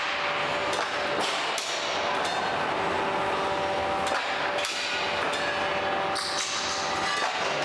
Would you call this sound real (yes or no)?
yes